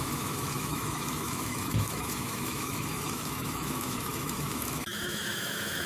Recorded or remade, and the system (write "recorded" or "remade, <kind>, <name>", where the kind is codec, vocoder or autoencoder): remade, autoencoder, DAC-VAE